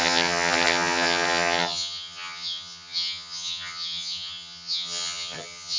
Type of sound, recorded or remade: remade